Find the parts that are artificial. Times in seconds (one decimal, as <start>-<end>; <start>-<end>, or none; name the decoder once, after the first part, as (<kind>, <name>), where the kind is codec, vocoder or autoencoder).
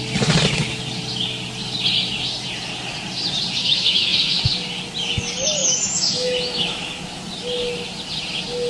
3.6-4.4 (autoencoder, DAC-VAE); 5.6-7.0